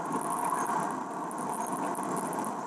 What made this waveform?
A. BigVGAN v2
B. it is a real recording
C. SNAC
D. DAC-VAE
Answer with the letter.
B